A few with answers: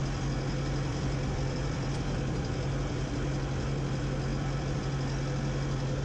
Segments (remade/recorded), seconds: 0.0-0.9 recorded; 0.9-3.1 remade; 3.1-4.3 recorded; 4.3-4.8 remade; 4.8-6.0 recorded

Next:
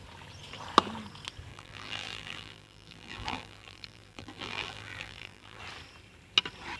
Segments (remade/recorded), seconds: 0.0-1.5 recorded; 1.5-5.6 remade; 5.6-6.8 recorded

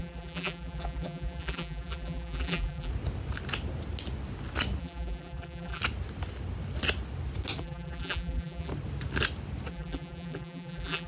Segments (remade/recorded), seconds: 0.0-2.9 remade; 2.9-4.8 recorded; 4.8-5.8 remade; 5.8-7.6 recorded; 7.6-8.7 remade; 8.7-9.7 recorded; 9.7-11.1 remade

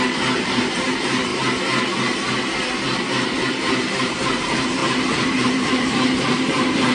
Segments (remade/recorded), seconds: 0.0-1.3 remade; 1.3-3.5 recorded; 3.5-6.9 remade

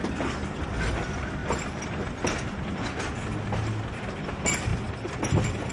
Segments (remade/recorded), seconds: 0.0-0.4 recorded; 0.4-0.9 remade; 0.9-1.4 recorded; 1.4-2.7 remade; 2.7-4.7 recorded; 4.7-5.7 remade

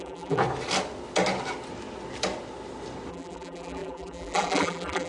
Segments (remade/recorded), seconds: 0.0-0.4 remade; 0.4-3.1 recorded; 3.1-5.1 remade